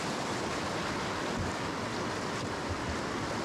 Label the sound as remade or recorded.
recorded